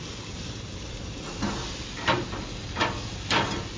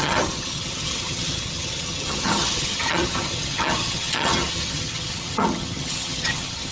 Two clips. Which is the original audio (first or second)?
first